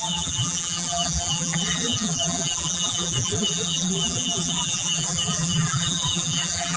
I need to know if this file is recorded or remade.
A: remade